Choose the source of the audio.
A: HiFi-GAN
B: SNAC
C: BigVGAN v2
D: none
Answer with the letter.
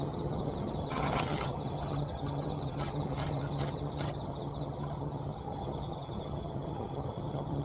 A